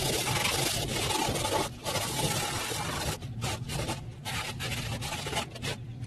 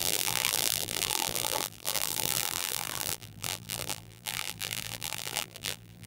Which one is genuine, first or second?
first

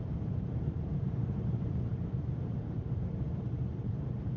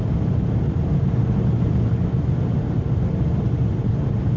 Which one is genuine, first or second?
second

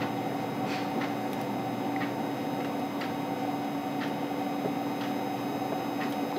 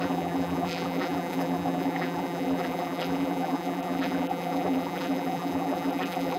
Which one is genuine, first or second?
first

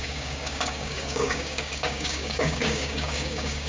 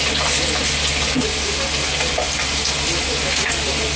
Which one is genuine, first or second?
second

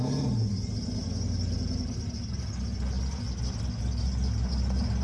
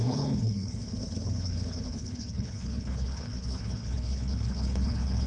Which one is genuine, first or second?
first